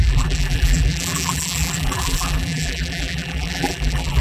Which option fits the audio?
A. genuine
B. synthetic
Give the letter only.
B